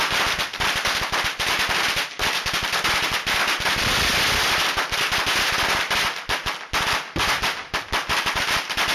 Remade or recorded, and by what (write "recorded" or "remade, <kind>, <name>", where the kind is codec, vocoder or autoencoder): recorded